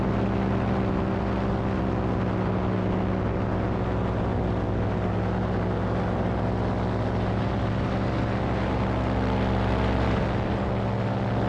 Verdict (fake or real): real